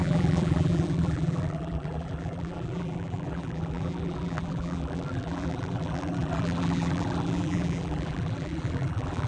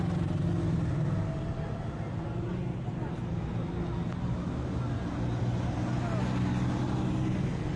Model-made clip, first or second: first